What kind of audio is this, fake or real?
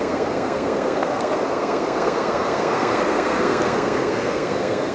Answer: fake